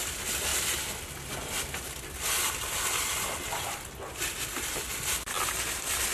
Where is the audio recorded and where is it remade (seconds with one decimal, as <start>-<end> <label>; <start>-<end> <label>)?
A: 0.0-6.1 recorded